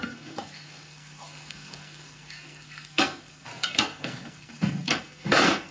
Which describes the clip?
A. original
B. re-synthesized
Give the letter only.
B